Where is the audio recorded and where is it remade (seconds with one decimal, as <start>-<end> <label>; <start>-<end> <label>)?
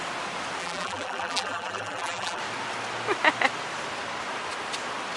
0.0-0.6 recorded; 0.6-2.4 remade; 2.4-5.2 recorded